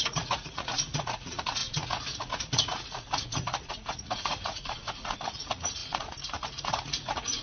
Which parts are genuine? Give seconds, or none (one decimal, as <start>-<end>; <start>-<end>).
none